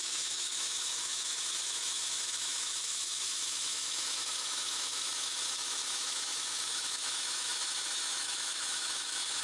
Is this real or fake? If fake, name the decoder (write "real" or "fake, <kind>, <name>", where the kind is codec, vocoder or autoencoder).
fake, autoencoder, DAC-VAE